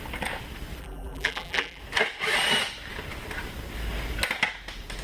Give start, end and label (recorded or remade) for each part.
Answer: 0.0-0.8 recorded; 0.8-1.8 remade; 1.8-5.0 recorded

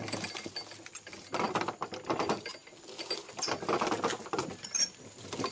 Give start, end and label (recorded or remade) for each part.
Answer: 0.0-5.5 recorded

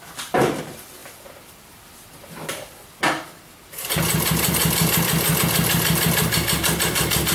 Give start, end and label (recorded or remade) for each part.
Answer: 0.0-1.0 recorded; 1.0-5.4 remade; 5.4-7.3 recorded

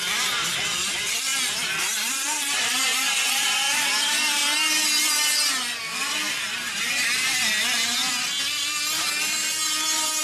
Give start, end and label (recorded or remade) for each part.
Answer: 0.0-4.4 remade; 4.4-6.4 recorded; 6.4-7.5 remade; 7.5-8.4 recorded; 8.4-10.2 remade

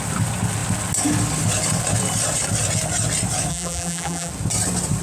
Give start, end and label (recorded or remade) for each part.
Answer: 0.0-3.5 recorded; 3.5-4.3 remade; 4.3-5.0 recorded

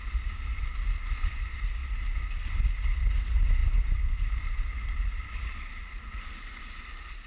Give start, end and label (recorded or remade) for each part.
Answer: 0.0-7.3 recorded

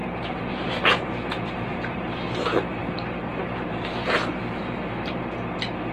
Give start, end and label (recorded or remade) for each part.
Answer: 0.0-2.3 remade; 2.3-2.8 recorded; 2.8-5.2 remade; 5.2-5.9 recorded

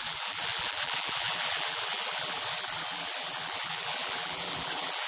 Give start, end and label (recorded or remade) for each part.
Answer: 0.0-5.1 remade